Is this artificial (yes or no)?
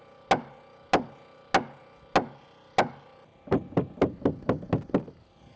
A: no